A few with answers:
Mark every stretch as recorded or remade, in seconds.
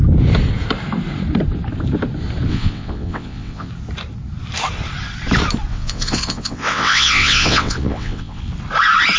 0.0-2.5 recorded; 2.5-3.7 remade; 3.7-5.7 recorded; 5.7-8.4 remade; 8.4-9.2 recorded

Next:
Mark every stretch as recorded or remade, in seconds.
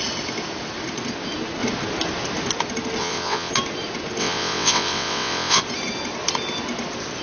0.0-3.0 recorded; 3.0-3.5 remade; 3.5-4.2 recorded; 4.2-5.6 remade; 5.6-7.2 recorded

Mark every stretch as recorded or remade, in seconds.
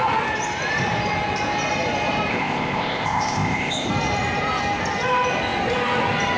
0.0-2.3 recorded; 2.3-3.9 remade; 3.9-6.4 recorded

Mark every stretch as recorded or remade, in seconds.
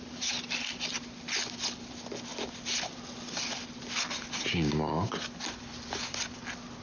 0.0-4.5 recorded; 4.5-5.1 remade; 5.1-6.8 recorded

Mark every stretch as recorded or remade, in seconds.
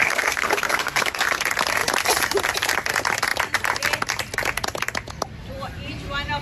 0.0-1.4 remade; 1.4-6.4 recorded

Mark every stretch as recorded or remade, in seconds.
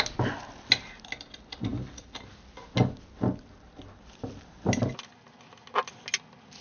0.0-6.6 recorded